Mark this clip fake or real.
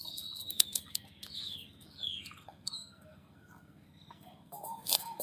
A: fake